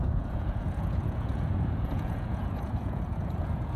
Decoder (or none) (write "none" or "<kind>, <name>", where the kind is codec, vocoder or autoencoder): vocoder, Vocos